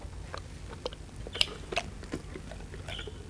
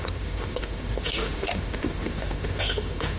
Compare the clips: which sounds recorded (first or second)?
first